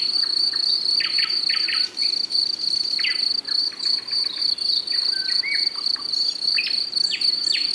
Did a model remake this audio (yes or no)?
no